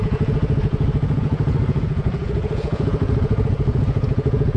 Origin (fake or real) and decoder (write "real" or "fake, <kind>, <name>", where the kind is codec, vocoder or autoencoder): fake, vocoder, Vocos